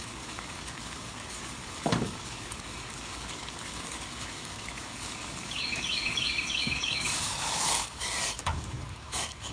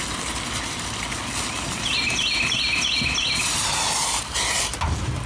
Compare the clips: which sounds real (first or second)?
second